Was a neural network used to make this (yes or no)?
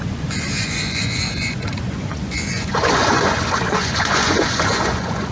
yes